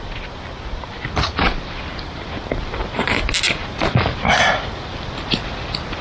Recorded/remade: recorded